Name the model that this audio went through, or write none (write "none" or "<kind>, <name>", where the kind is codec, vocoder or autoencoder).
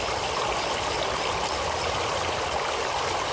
none